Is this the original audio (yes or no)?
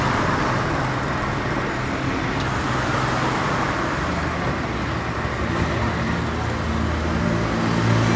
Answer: yes